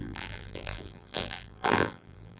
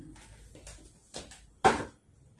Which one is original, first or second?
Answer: second